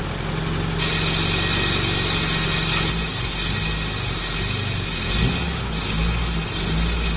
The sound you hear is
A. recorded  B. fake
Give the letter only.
A